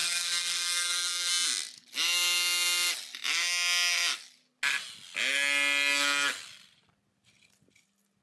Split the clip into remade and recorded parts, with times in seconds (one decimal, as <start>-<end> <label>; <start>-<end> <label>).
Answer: 0.0-1.3 remade; 1.3-8.2 recorded